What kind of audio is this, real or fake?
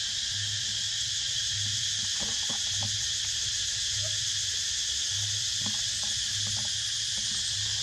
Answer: real